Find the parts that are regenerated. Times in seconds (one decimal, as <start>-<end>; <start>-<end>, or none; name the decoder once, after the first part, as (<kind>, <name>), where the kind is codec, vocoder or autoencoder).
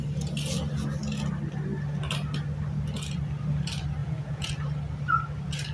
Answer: 4.0-4.5 (vocoder, Vocos)